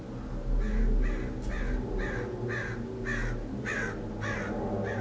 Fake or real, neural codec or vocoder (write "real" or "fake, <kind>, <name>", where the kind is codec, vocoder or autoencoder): real